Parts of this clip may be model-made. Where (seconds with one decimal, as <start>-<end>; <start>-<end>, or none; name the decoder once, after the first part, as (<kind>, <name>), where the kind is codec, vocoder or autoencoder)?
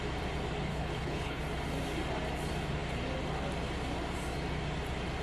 0.7-1.4 (codec, HILCodec)